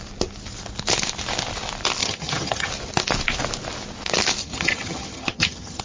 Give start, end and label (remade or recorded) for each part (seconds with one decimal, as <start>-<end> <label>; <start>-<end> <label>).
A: 0.0-2.0 recorded; 2.0-2.7 remade; 2.7-4.4 recorded; 4.4-5.8 remade